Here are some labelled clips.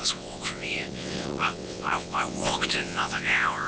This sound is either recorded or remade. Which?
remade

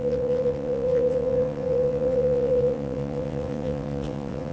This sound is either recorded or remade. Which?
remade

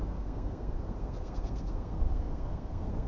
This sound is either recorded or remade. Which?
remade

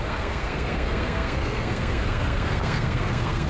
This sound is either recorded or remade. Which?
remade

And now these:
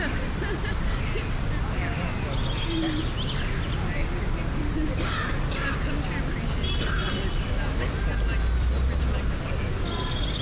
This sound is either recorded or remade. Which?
recorded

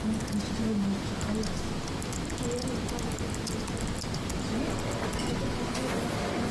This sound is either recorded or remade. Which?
recorded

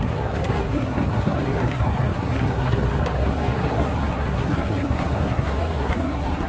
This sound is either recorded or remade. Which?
remade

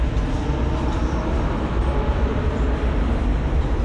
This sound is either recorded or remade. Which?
recorded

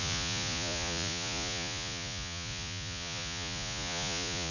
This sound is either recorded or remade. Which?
remade